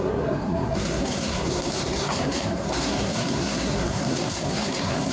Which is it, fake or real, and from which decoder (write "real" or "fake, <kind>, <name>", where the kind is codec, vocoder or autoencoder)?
fake, codec, SNAC